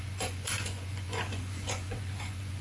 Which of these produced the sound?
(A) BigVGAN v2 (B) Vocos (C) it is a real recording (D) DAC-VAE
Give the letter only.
B